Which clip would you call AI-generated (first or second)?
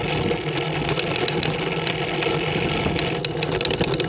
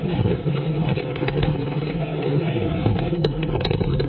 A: second